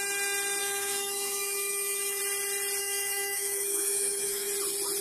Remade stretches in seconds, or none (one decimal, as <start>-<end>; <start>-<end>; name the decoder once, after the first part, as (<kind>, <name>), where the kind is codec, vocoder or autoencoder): 0.6-2.2 (autoencoder, DAC-VAE); 2.8-4.5